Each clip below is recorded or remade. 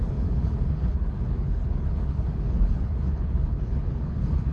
remade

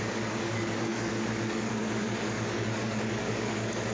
remade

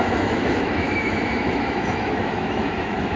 remade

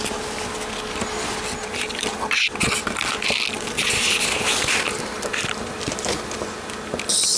recorded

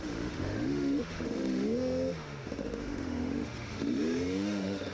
remade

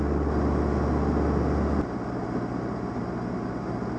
recorded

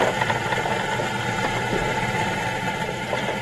recorded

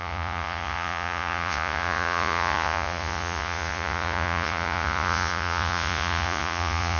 remade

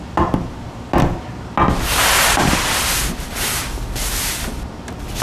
recorded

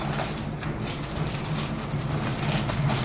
recorded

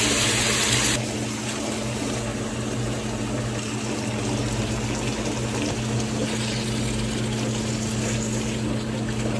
recorded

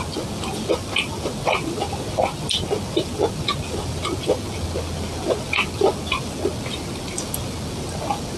recorded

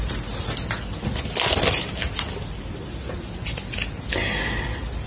recorded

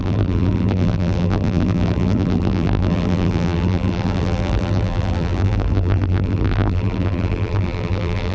remade